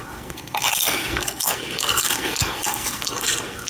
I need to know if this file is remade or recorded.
remade